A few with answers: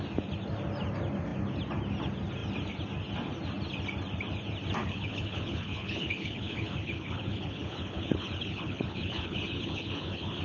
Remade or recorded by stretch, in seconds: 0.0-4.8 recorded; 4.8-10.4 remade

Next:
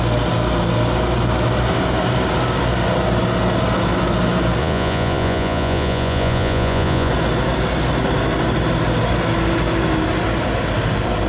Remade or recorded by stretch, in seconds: 0.0-4.6 recorded; 4.6-7.1 remade; 7.1-11.3 recorded

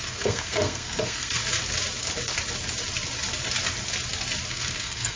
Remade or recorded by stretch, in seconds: 0.0-1.4 remade; 1.4-4.5 recorded; 4.5-5.2 remade

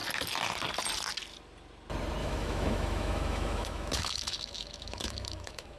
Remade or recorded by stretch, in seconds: 0.0-2.2 recorded; 2.2-5.8 remade

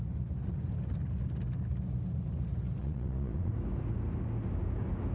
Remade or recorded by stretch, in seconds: 0.0-2.8 recorded; 2.8-3.5 remade; 3.5-5.1 recorded

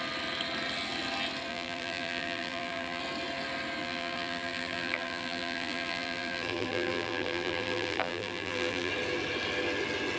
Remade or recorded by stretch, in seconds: 0.0-1.5 recorded; 1.5-3.0 remade; 3.0-3.8 recorded; 3.8-8.9 remade; 8.9-10.2 recorded

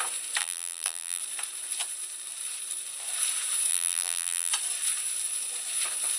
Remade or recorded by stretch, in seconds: 0.0-0.4 recorded; 0.4-1.2 remade; 1.2-3.7 recorded; 3.7-4.5 remade; 4.5-6.2 recorded